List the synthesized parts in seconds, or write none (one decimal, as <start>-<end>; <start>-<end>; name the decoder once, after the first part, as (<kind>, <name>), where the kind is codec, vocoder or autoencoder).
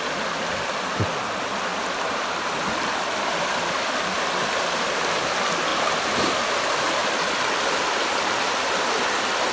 1.7-4.8 (vocoder, BigVGAN v2); 7.0-7.8